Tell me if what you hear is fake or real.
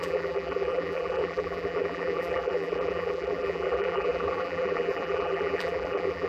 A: fake